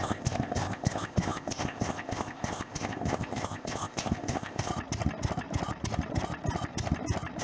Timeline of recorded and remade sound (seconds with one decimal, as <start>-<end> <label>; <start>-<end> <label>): 0.0-4.7 remade; 4.7-7.4 recorded